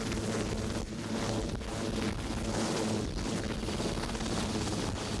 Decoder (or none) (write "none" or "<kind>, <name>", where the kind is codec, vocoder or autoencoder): none